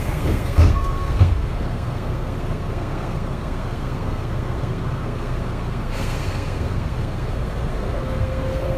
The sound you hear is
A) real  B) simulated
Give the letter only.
B